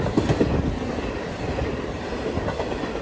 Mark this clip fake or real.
real